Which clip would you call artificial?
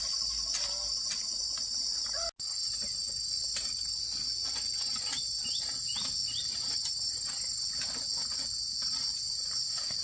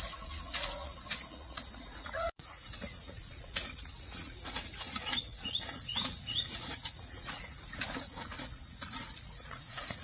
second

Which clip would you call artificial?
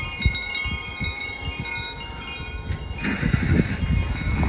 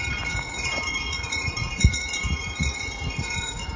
second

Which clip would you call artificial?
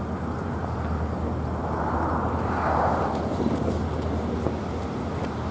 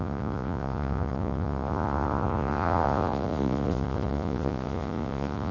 second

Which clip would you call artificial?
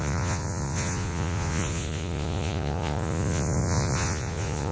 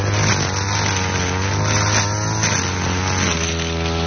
first